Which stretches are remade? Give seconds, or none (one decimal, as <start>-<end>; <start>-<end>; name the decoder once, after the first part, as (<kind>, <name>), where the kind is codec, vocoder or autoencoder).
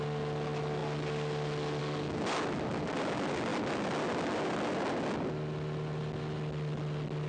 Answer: none